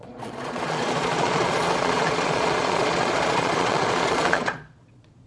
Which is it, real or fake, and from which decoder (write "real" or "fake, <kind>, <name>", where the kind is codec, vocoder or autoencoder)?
fake, vocoder, Vocos